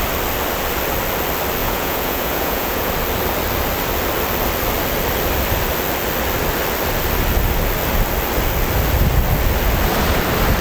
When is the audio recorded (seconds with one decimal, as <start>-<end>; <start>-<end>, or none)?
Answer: 0.0-1.6; 2.9-10.6